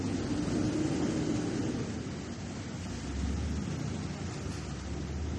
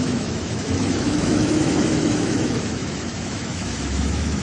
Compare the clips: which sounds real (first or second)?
first